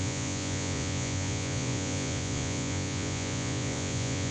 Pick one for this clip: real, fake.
fake